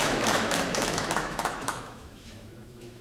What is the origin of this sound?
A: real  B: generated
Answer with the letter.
B